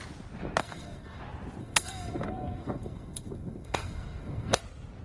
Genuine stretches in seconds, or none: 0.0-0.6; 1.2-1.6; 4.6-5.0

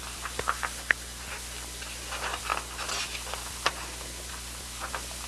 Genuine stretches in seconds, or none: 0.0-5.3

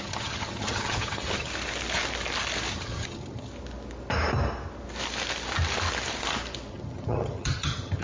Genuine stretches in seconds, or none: 1.5-2.7; 3.5-6.7

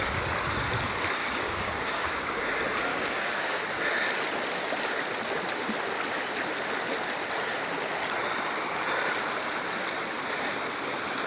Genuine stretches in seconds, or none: 0.0-1.2; 2.5-2.9; 3.8-11.3

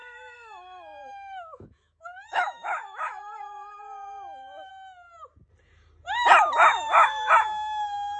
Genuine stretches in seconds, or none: 4.7-6.7; 7.3-8.2

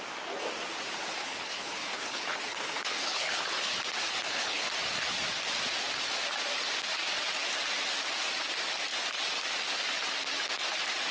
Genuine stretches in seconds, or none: 0.0-1.2; 3.8-4.2; 4.7-11.1

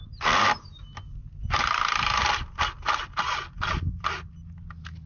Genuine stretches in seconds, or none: 0.0-5.1

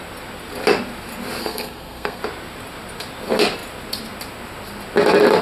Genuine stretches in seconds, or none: 0.0-1.4; 2.2-5.4